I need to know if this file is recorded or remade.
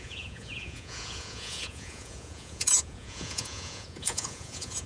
remade